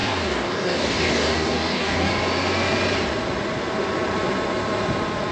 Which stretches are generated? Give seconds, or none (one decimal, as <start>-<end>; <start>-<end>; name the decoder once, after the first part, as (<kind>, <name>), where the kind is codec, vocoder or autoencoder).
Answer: 0.0-2.1 (codec, DAC)